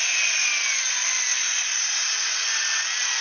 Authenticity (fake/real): real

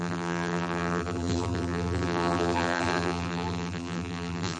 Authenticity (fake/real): fake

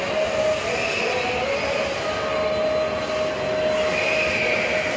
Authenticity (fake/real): real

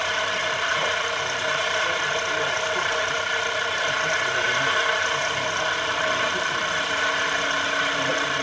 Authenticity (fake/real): real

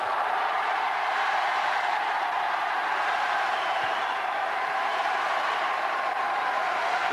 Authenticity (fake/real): fake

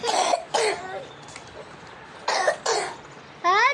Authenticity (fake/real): real